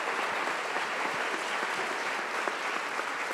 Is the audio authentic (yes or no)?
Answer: yes